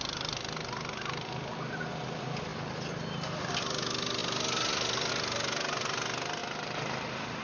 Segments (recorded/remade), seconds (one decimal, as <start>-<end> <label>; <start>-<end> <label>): 0.0-7.4 recorded